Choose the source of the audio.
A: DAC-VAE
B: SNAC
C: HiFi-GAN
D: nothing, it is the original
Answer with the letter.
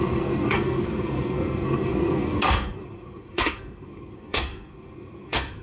B